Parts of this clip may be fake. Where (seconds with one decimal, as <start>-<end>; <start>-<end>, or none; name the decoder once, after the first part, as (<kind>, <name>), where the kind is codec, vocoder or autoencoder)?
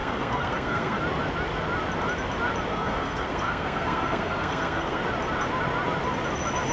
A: 0.0-1.0 (codec, SNAC); 2.7-5.0